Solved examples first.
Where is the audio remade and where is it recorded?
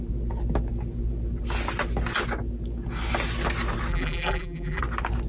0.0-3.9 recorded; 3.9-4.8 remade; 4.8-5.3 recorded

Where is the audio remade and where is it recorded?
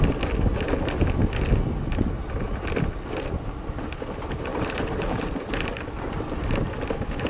0.0-4.5 recorded; 4.5-6.3 remade; 6.3-7.3 recorded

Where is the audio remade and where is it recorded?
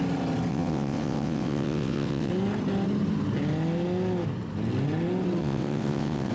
0.0-0.5 recorded; 0.5-2.3 remade; 2.3-5.4 recorded; 5.4-6.3 remade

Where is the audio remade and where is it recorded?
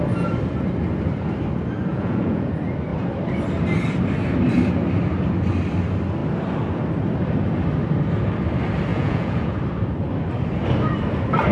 0.0-1.9 recorded; 1.9-2.5 remade; 2.5-8.9 recorded; 8.9-9.6 remade; 9.6-11.5 recorded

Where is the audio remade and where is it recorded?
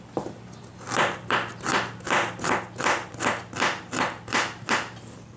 0.0-5.4 recorded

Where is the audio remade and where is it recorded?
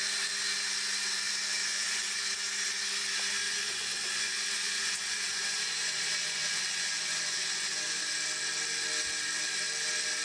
0.0-1.6 recorded; 1.6-2.3 remade; 2.3-3.4 recorded; 3.4-8.1 remade; 8.1-10.2 recorded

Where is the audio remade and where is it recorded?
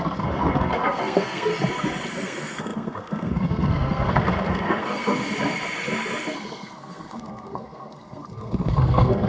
0.0-1.5 remade; 1.5-2.1 recorded; 2.1-5.1 remade; 5.1-6.5 recorded; 6.5-9.3 remade